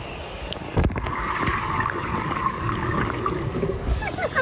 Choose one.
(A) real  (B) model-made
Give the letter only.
B